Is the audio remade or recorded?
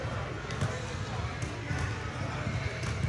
recorded